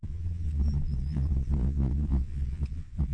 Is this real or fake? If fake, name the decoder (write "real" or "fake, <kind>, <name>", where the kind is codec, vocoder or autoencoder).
fake, vocoder, Vocos